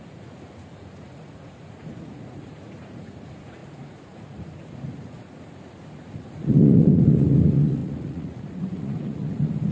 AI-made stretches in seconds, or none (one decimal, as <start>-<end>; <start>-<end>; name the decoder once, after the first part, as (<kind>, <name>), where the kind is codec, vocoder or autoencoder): 0.0-9.7 (vocoder, Vocos)